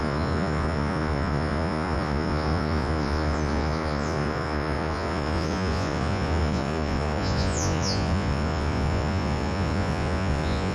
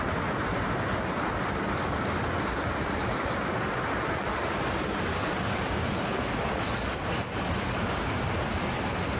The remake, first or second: first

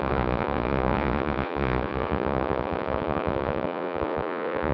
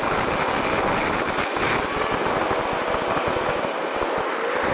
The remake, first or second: first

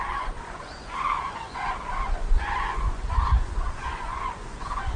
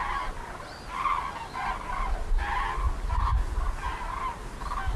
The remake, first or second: first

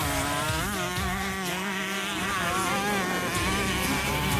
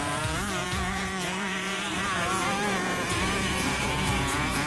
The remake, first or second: second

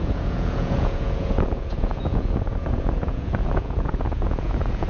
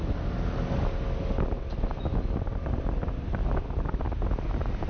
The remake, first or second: first